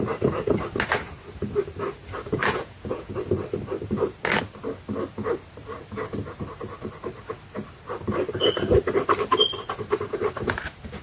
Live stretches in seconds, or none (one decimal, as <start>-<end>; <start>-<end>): 0.0-2.4; 3.1-11.0